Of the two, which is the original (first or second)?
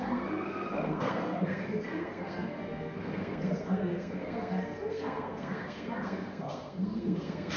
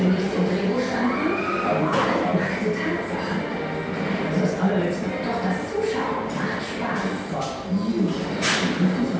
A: second